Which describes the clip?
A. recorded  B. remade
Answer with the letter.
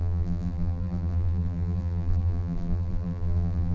B